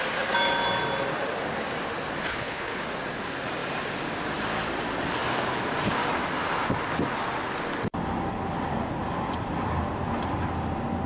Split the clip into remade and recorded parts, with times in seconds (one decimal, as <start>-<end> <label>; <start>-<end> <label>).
0.0-2.3 recorded; 2.3-2.8 remade; 2.8-11.1 recorded